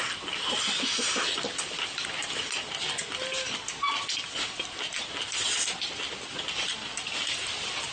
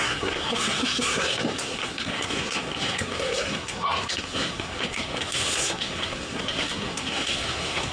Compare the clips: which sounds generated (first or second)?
second